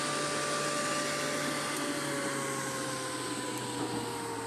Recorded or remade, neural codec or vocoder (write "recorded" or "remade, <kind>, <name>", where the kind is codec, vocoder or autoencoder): recorded